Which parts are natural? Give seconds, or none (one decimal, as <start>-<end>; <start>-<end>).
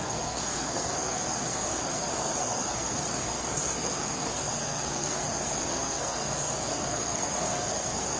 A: none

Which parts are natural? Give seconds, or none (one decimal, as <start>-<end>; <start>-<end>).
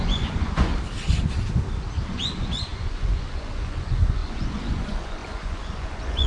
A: 0.7-2.1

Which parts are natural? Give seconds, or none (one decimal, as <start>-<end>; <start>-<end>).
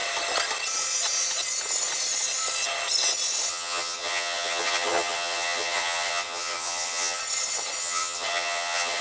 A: 0.0-3.5; 7.2-7.8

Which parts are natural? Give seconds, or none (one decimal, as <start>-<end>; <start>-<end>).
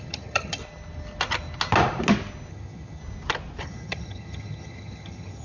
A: 0.6-2.5; 3.0-3.6